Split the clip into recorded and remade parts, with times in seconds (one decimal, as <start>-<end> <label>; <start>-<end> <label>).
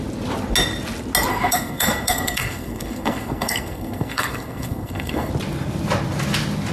0.0-1.3 recorded; 1.3-5.3 remade; 5.3-6.7 recorded